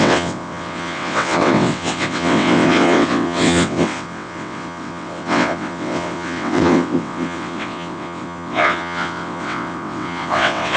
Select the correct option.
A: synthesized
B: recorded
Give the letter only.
A